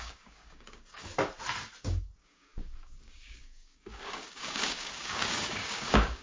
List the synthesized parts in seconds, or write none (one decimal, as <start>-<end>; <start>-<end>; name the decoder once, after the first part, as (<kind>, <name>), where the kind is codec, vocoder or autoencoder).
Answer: 0.0-1.1 (codec, DAC); 1.8-6.2